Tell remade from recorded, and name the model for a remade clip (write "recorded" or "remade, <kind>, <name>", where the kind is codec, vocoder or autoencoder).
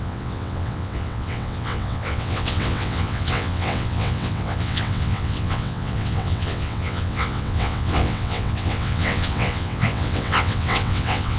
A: remade, vocoder, WaveNeXt